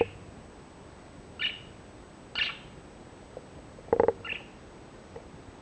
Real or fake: real